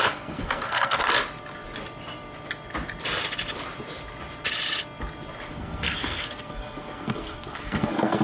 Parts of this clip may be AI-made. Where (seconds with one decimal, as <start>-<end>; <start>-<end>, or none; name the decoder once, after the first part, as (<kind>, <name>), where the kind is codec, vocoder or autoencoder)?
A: 0.0-1.1 (codec, SNAC); 5.5-8.2